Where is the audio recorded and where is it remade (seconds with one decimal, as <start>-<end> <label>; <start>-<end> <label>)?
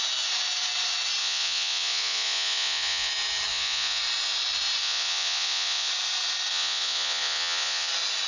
0.0-1.2 recorded; 1.2-3.1 remade; 3.1-3.5 recorded; 3.5-4.0 remade; 4.0-4.8 recorded; 4.8-5.9 remade; 5.9-6.5 recorded; 6.5-7.9 remade; 7.9-8.3 recorded